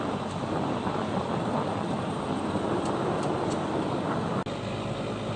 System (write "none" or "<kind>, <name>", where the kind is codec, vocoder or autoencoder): none